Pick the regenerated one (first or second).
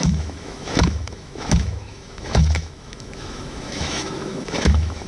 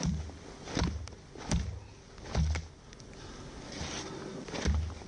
first